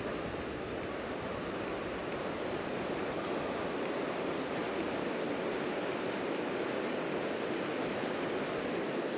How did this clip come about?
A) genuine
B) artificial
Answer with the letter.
A